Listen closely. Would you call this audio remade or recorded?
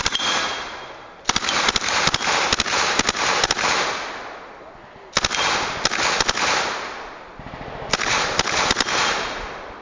recorded